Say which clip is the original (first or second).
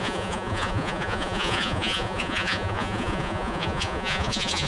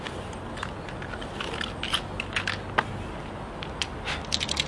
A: second